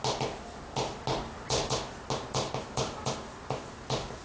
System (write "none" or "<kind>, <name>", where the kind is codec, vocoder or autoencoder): none